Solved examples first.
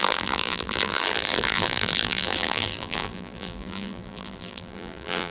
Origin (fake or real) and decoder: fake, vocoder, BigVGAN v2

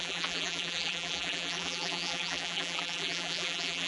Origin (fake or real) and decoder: fake, vocoder, BigVGAN v2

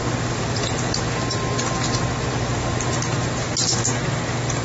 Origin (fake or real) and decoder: real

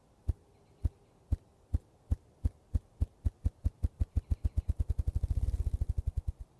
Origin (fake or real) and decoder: real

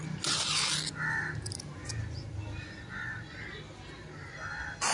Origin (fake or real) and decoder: real